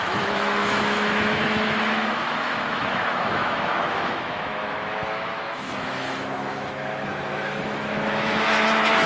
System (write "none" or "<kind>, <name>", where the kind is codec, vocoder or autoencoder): autoencoder, DAC-VAE